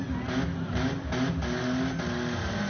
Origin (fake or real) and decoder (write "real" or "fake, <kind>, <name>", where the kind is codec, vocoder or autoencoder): real